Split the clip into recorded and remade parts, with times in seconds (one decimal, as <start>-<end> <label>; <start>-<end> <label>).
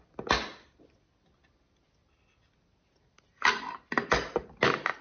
0.0-5.0 recorded